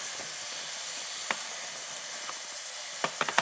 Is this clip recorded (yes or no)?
yes